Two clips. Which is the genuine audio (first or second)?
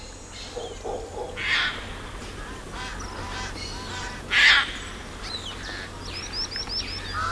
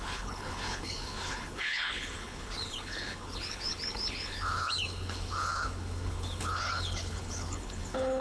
first